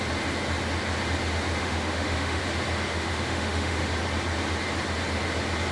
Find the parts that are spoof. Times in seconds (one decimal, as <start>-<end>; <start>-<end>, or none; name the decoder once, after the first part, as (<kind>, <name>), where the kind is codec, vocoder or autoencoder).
1.6-2.4 (autoencoder, DAC-VAE); 2.9-3.9